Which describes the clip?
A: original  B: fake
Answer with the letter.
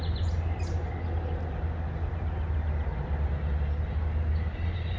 A